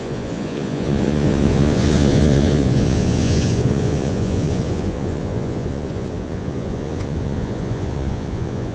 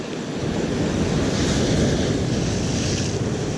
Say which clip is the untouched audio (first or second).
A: second